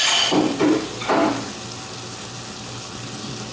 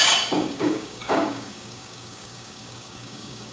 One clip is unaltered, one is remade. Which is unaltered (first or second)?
first